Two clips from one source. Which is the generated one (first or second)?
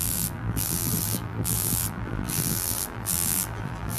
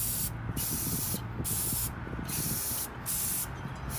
first